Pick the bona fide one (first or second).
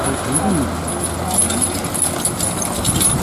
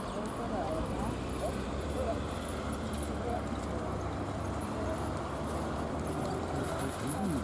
first